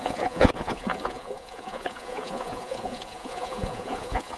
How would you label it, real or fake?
fake